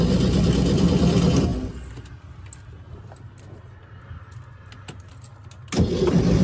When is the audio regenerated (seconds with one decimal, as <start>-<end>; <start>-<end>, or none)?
none